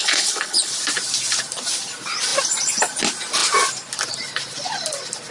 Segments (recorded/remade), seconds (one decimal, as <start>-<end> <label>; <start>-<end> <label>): 0.0-0.7 remade; 0.7-5.3 recorded